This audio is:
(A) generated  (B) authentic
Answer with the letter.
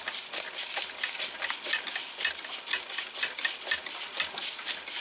B